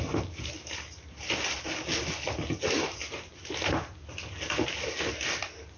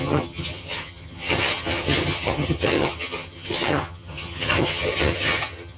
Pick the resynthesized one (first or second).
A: second